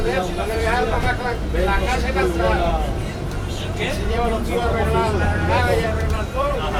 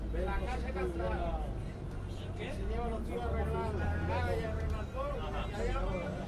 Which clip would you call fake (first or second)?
first